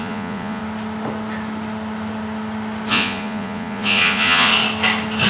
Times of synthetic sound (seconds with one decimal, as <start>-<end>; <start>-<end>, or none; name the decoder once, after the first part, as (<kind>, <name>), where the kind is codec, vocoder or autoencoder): 0.0-0.6 (vocoder, Vocos); 2.9-4.5